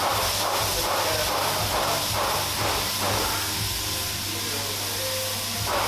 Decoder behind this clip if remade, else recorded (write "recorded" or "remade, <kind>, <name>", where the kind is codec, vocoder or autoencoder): recorded